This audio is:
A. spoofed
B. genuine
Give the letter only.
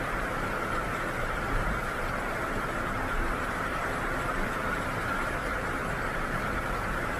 A